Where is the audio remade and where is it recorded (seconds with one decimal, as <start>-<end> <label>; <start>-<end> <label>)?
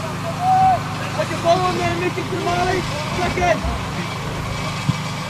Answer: 0.0-1.9 recorded; 1.9-4.8 remade; 4.8-5.3 recorded